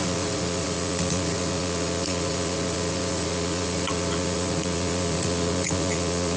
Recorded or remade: remade